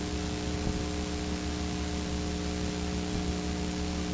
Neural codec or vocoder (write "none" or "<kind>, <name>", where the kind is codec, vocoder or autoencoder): none